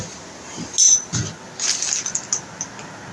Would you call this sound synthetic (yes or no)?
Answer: no